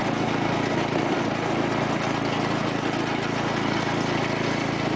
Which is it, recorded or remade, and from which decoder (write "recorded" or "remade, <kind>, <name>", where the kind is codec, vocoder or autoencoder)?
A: recorded